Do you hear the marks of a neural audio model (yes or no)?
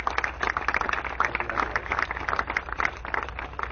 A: no